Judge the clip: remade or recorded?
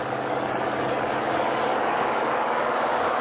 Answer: remade